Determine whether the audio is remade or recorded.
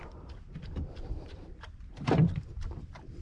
remade